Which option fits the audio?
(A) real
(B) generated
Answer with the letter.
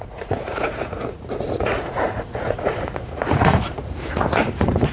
B